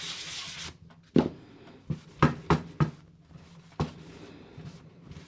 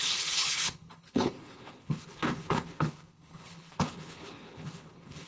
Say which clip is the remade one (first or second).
second